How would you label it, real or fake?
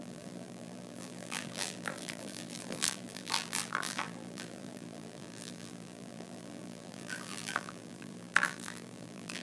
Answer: fake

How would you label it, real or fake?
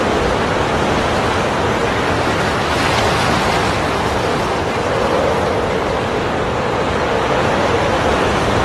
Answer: real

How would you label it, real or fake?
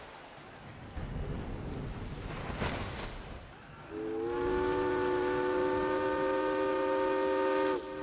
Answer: real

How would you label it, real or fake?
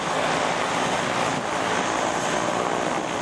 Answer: real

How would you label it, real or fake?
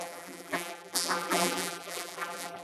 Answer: fake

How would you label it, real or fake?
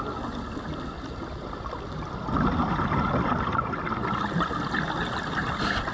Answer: real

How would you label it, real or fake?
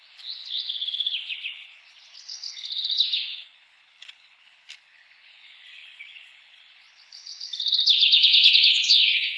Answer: fake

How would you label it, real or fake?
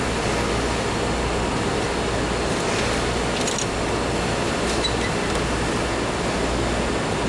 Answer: real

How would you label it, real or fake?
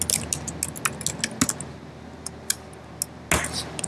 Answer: real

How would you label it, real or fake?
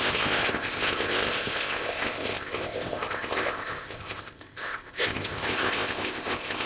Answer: fake